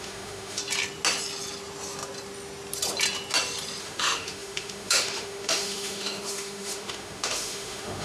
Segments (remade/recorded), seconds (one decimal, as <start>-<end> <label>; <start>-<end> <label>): 0.0-0.6 remade; 0.6-3.8 recorded; 3.8-8.0 remade